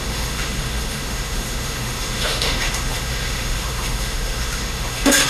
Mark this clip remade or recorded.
remade